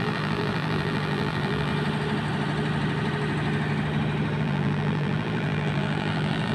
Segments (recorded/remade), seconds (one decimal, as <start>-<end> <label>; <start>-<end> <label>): 0.0-1.7 remade; 1.7-4.4 recorded; 4.4-6.5 remade